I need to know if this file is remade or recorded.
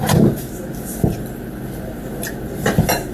recorded